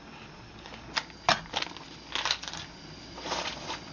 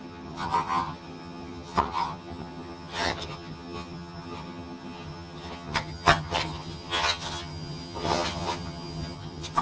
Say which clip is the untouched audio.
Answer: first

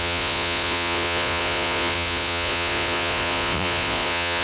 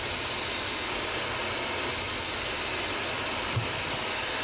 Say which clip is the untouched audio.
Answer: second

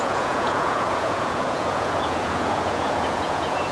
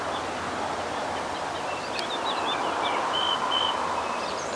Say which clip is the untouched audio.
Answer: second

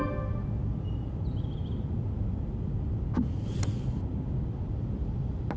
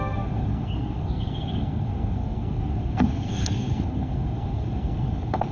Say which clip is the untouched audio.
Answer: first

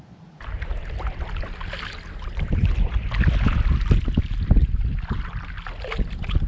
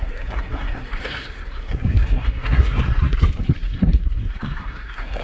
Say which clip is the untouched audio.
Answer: first